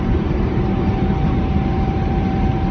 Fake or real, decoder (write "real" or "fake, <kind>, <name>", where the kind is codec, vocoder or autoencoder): fake, vocoder, BigVGAN v2